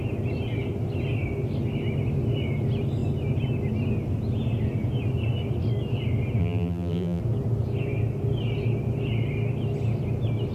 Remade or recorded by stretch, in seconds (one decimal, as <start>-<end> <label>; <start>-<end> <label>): 0.0-6.4 recorded; 6.4-7.2 remade; 7.2-10.5 recorded